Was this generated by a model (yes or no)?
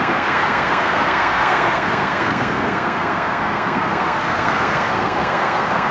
yes